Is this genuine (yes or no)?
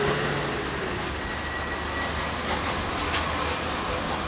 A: yes